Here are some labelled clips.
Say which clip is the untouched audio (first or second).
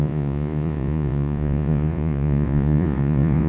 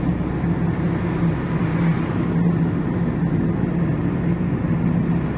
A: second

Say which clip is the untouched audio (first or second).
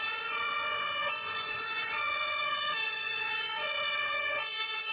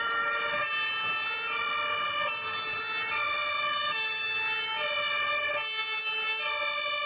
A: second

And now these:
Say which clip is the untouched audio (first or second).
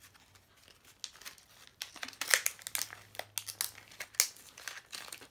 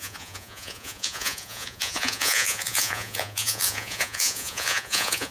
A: first